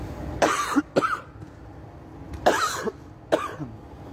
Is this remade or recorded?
recorded